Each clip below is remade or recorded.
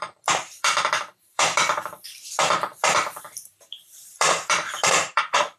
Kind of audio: remade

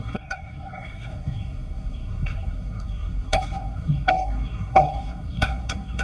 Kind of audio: remade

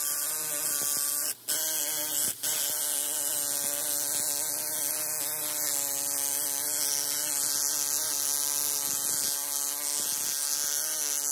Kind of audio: recorded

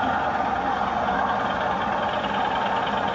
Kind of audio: recorded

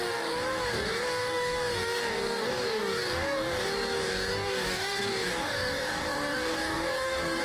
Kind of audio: remade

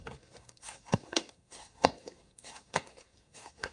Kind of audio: remade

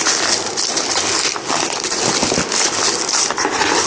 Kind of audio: recorded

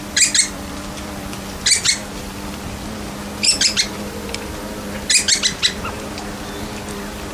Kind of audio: recorded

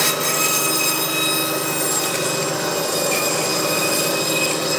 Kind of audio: recorded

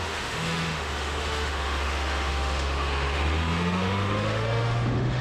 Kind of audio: remade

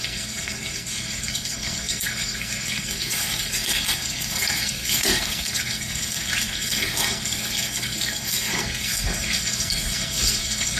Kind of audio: remade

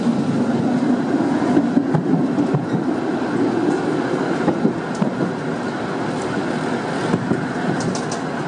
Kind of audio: recorded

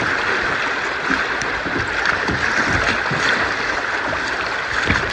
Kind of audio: recorded